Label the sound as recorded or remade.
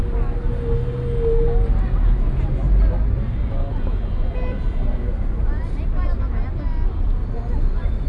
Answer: recorded